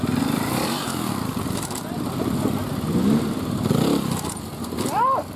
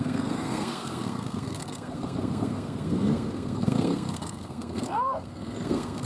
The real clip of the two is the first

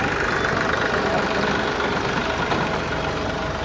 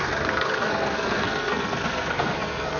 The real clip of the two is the first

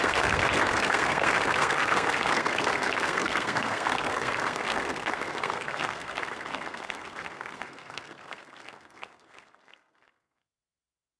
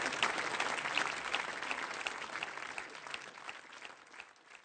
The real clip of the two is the second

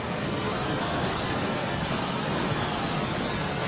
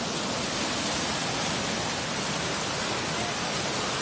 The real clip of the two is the second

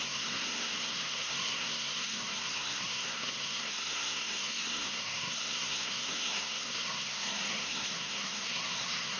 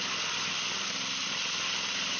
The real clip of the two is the second